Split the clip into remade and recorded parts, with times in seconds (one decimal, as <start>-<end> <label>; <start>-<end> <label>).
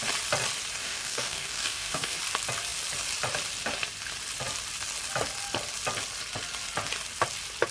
0.0-0.8 recorded; 0.8-2.2 remade; 2.2-7.7 recorded